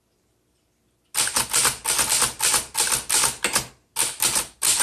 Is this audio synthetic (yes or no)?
no